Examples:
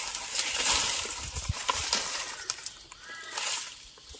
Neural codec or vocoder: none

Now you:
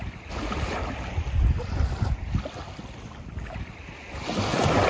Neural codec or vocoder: none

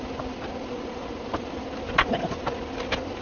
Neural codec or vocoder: none